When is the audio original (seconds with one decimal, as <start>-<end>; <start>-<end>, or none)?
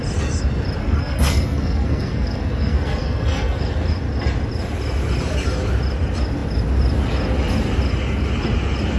0.0-0.8; 3.6-9.0